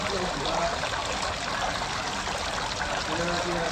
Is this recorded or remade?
recorded